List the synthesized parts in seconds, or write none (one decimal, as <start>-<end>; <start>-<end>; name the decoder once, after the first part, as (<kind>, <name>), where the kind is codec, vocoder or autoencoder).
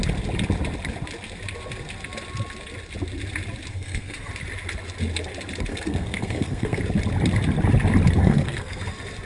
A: 3.7-4.3 (codec, SNAC); 5.7-6.8; 8.2-8.8